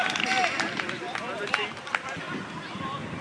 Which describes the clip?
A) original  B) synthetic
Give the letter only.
A